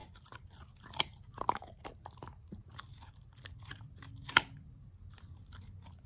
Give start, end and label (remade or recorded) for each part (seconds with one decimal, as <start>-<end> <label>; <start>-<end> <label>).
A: 0.0-6.1 recorded